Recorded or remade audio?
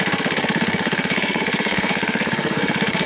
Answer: remade